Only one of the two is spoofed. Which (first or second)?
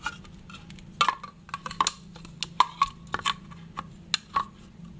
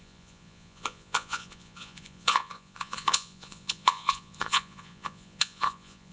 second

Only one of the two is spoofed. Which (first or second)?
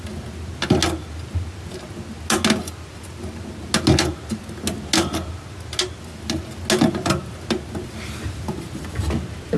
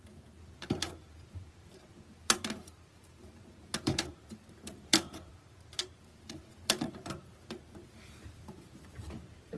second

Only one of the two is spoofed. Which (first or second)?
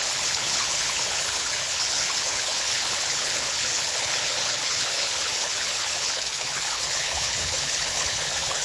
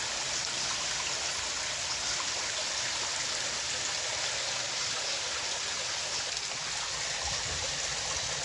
first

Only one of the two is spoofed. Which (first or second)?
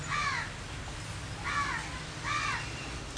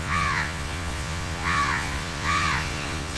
second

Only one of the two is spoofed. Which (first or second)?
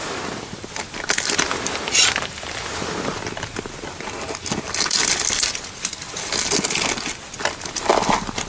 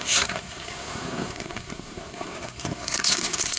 second